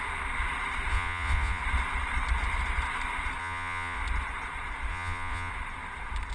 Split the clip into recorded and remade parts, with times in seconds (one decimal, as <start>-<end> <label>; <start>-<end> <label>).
0.0-0.9 recorded; 0.9-1.6 remade; 1.6-3.4 recorded; 3.4-4.0 remade; 4.0-4.9 recorded; 4.9-5.5 remade; 5.5-6.3 recorded